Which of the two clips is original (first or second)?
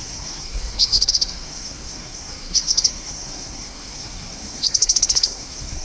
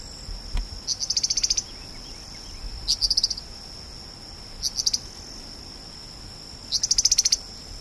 second